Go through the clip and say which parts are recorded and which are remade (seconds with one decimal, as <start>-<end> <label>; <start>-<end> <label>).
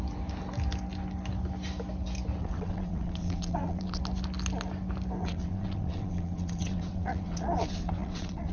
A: 0.0-2.4 recorded; 2.4-4.0 remade; 4.0-5.2 recorded; 5.2-8.5 remade